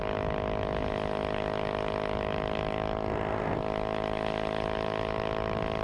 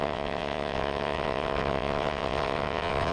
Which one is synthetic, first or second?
second